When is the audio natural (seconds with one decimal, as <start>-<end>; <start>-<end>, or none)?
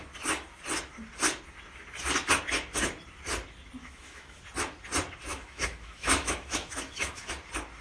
0.0-3.8; 4.4-5.3; 7.3-7.8